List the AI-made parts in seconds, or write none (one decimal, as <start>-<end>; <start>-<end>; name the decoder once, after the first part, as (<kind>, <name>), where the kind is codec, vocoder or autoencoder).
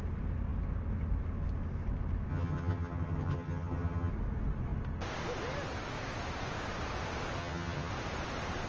2.3-4.1 (vocoder, HiFi-GAN); 7.4-7.9